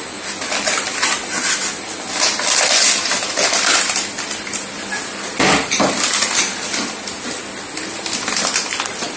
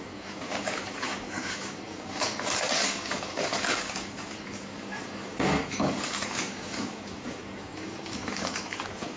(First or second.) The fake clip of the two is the second